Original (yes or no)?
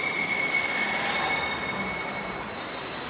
yes